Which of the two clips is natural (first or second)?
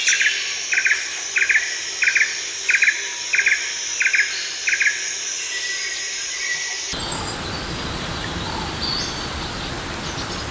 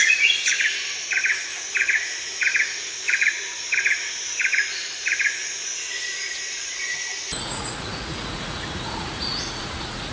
first